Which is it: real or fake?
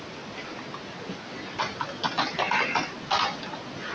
real